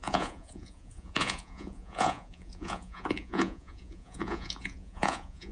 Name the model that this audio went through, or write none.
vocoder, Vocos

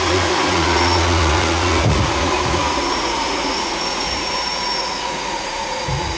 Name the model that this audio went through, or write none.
vocoder, Vocos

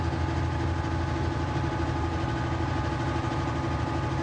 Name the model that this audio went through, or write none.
none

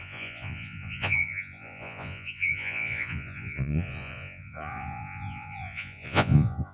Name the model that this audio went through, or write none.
vocoder, Vocos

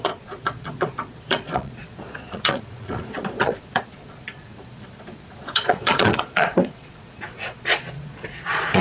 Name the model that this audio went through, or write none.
vocoder, Vocos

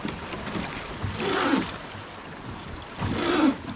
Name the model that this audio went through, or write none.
none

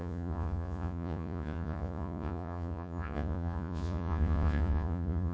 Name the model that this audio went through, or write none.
vocoder, Vocos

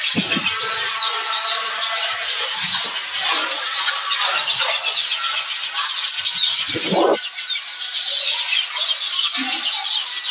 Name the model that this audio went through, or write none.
none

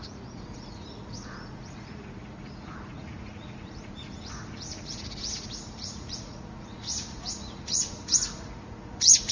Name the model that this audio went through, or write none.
vocoder, Vocos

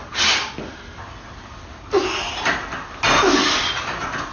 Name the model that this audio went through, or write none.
none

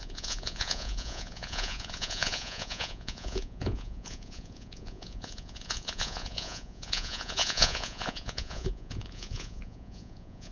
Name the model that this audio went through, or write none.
vocoder, Vocos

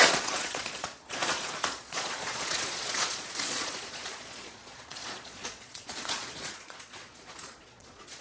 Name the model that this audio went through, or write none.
vocoder, Vocos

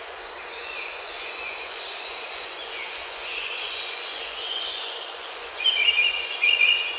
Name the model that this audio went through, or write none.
vocoder, Vocos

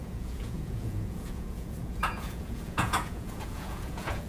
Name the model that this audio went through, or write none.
vocoder, Vocos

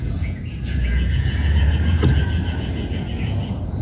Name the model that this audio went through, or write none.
vocoder, Vocos